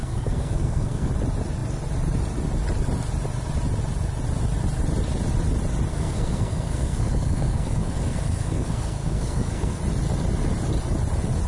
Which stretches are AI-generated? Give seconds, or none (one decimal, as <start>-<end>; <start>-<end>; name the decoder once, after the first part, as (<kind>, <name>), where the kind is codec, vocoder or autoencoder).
0.0-1.1 (codec, SNAC); 5.9-9.8